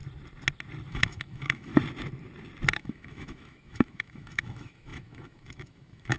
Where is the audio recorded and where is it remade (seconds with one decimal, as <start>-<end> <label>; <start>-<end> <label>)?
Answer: 0.0-0.9 recorded; 0.9-1.7 remade; 1.7-2.7 recorded; 2.7-6.2 remade